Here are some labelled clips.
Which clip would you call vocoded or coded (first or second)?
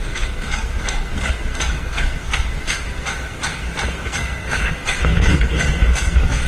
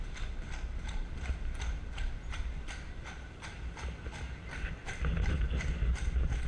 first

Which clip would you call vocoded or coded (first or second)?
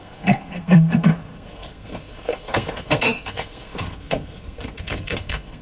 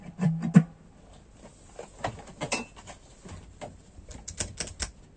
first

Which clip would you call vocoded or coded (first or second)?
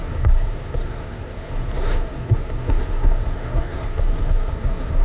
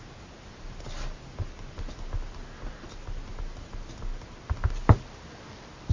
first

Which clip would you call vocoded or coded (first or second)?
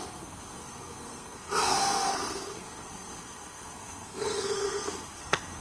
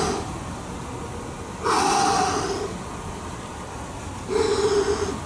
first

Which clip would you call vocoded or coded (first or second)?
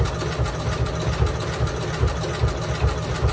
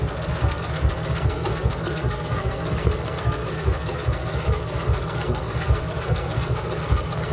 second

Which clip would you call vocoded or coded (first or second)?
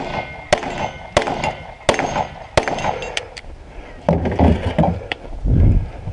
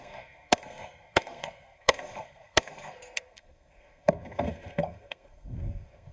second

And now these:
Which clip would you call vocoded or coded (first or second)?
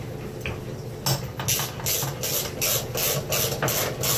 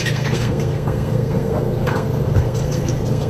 second